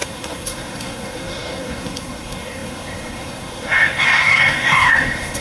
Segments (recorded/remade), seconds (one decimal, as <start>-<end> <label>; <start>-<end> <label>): 0.0-5.4 remade